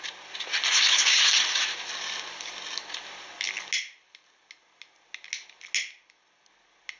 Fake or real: real